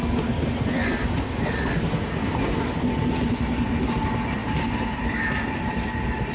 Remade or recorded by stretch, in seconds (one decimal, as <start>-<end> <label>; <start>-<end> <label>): 0.0-4.4 recorded; 4.4-5.7 remade; 5.7-6.3 recorded